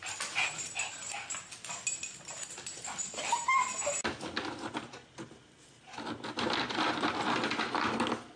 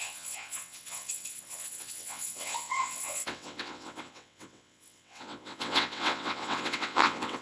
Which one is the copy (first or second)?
second